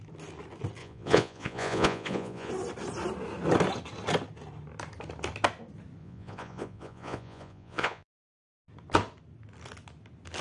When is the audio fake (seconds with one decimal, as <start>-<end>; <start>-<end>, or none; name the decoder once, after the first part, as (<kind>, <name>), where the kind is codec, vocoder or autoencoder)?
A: 0.8-2.5 (vocoder, Vocos); 6.0-8.2